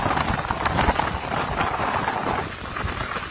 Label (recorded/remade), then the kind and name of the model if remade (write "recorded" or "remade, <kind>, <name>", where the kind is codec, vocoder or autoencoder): recorded